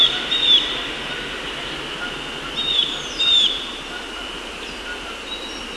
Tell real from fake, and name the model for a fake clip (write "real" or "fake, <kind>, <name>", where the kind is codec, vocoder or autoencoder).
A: real